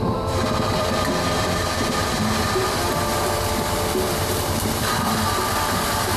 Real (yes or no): no